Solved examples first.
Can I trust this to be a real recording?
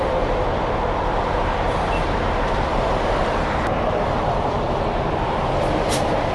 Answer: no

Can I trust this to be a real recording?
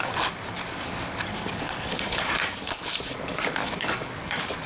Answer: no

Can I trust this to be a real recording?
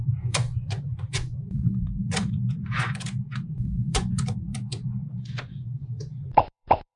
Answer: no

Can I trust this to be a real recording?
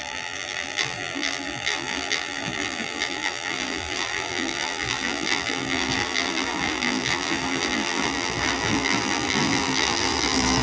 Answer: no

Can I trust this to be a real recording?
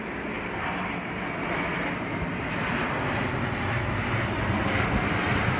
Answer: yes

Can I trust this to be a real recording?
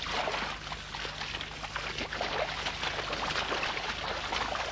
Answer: yes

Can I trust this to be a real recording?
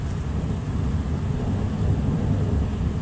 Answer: yes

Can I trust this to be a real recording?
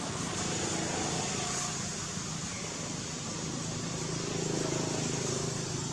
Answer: yes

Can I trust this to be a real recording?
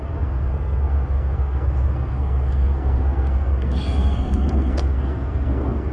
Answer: no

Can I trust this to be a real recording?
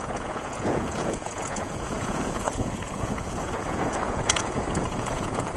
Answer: no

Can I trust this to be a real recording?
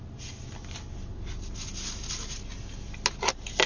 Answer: yes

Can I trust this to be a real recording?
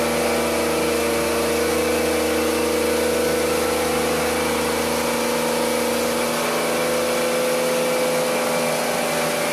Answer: yes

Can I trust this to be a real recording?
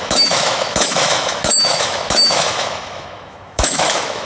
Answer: no